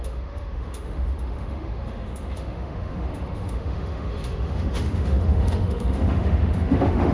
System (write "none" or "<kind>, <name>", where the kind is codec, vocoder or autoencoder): autoencoder, DAC-VAE